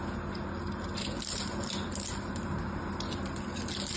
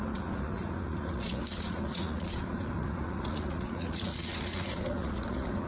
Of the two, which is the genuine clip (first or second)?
first